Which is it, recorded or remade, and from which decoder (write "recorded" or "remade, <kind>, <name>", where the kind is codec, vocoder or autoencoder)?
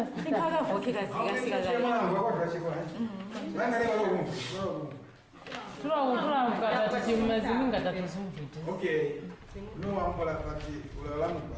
recorded